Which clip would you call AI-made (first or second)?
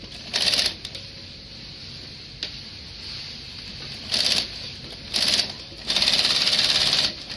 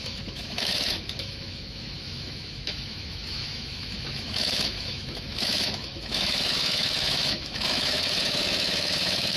second